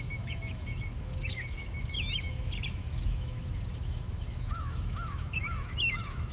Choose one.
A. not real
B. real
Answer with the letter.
A